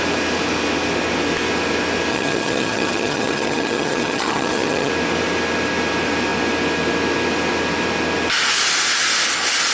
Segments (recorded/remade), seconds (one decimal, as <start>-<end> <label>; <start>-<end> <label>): 0.0-2.1 recorded; 2.1-4.9 remade; 4.9-9.7 recorded